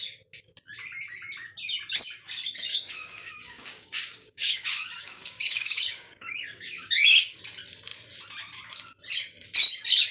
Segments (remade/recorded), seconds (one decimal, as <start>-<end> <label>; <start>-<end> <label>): 0.0-2.7 recorded; 2.7-7.4 remade; 7.4-10.1 recorded